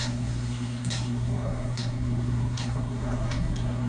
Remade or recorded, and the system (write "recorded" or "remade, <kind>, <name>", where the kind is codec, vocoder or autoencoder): remade, codec, SNAC